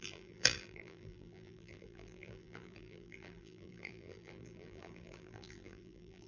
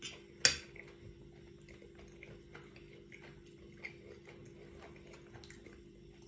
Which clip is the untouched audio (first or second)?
second